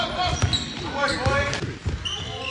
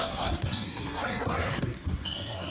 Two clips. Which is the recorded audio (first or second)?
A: first